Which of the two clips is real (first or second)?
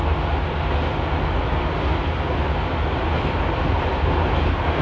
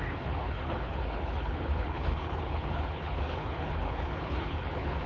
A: first